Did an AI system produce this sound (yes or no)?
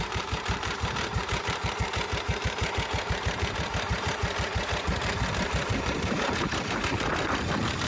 yes